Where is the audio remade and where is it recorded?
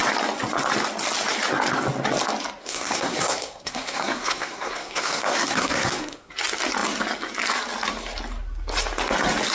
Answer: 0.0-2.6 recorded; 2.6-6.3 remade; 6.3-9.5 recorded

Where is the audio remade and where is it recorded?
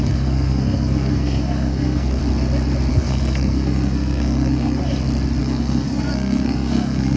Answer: 0.0-2.2 remade; 2.2-2.9 recorded; 2.9-4.8 remade; 4.8-5.4 recorded; 5.4-7.2 remade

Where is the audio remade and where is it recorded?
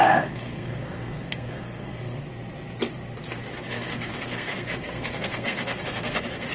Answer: 0.0-2.2 remade; 2.2-3.7 recorded; 3.7-6.5 remade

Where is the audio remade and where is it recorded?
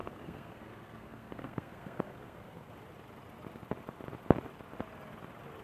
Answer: 0.0-2.7 remade; 2.7-5.6 recorded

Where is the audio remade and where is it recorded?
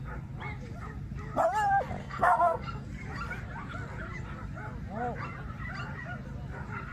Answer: 0.0-2.0 recorded; 2.0-2.8 remade; 2.8-6.9 recorded